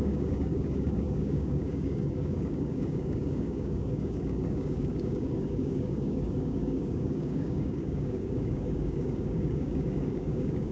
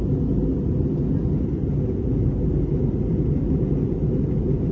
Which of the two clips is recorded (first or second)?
second